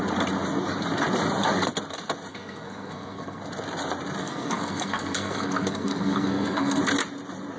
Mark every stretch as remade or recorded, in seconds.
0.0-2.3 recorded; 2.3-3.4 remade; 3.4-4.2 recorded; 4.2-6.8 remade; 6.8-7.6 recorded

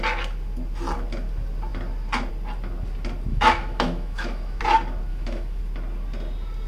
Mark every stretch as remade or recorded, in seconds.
0.0-3.3 recorded; 3.3-4.6 remade; 4.6-5.1 recorded; 5.1-5.6 remade; 5.6-6.7 recorded

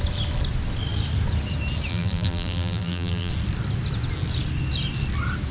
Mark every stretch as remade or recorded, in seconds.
0.0-1.9 recorded; 1.9-3.3 remade; 3.3-5.5 recorded

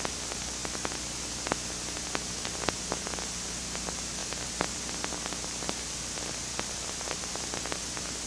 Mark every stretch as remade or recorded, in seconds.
0.0-8.3 recorded